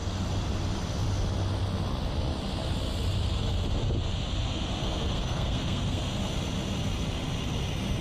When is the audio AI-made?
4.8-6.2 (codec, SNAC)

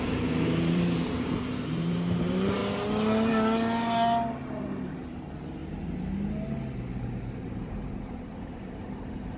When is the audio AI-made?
0.0-2.6 (vocoder, BigVGAN v2); 4.9-5.6; 7.0-9.4